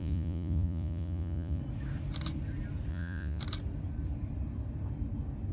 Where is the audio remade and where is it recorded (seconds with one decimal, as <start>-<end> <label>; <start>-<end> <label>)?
0.0-1.6 remade; 1.6-2.9 recorded; 2.9-3.4 remade; 3.4-5.5 recorded